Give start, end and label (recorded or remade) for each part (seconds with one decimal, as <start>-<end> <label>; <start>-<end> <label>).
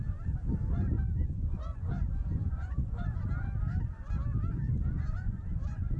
0.0-0.7 recorded; 0.7-3.2 remade; 3.2-4.5 recorded; 4.5-6.0 remade